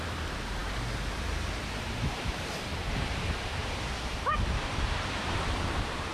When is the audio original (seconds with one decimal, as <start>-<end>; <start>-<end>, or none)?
3.6-4.7